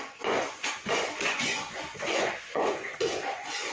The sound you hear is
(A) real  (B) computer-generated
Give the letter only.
B